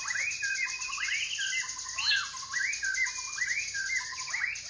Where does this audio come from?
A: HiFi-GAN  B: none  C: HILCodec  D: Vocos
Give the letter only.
B